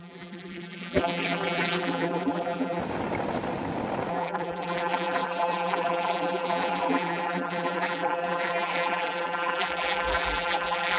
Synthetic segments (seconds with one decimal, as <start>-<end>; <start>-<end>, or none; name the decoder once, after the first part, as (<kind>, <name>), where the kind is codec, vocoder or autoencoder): 0.0-2.8 (vocoder, BigVGAN v2); 4.1-11.0